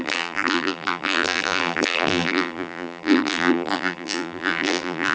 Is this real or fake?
fake